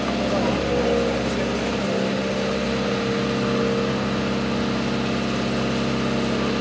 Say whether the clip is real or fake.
real